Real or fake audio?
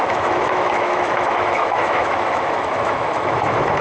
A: fake